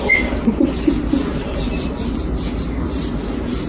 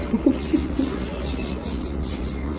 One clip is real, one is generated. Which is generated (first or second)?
second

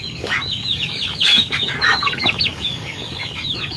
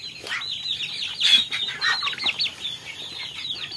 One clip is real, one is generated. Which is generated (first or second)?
first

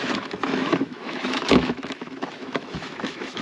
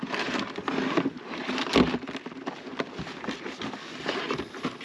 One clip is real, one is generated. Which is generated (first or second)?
first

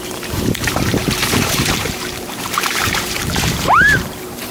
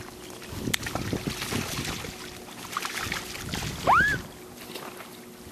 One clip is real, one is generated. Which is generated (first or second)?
first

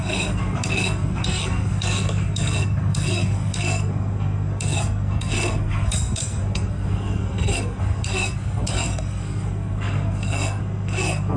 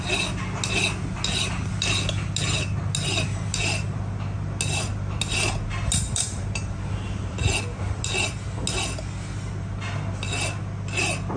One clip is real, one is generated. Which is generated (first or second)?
first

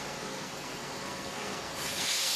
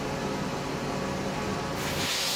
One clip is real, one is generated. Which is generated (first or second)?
first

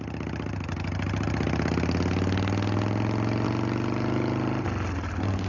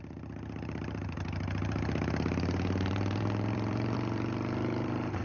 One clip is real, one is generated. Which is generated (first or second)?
second